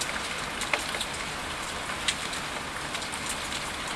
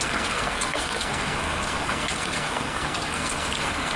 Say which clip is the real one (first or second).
first